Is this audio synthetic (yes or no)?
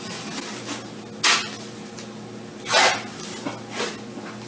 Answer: no